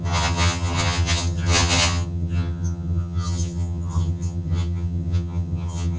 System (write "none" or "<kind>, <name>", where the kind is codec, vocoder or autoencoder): vocoder, HiFi-GAN